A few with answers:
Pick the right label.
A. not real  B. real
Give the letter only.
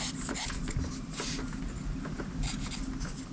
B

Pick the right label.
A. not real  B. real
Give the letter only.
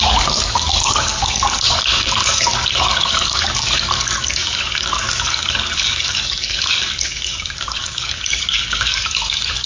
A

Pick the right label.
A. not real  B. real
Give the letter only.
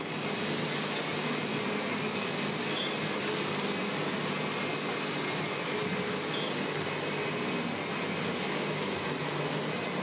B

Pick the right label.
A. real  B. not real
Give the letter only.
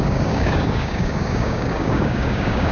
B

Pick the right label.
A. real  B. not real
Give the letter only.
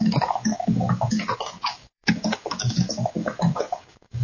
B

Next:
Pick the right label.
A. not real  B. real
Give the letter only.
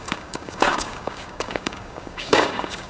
A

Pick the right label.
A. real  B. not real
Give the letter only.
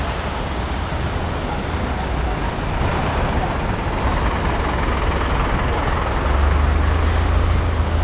A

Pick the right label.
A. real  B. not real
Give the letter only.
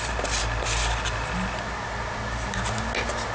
A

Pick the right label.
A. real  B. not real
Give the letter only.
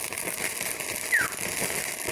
A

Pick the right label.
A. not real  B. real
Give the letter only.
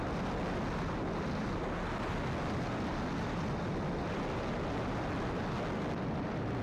B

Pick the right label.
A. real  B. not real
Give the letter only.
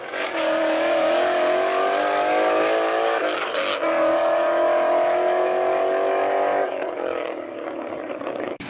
B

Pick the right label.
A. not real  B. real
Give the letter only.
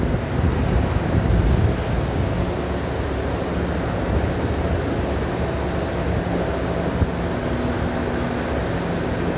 B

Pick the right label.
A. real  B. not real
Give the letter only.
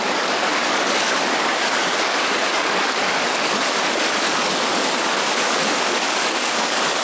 B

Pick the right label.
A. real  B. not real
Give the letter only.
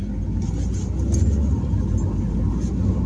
A